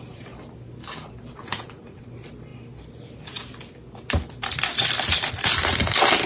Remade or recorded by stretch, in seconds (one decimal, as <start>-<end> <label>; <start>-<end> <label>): 0.0-1.4 recorded; 1.4-2.0 remade; 2.0-6.3 recorded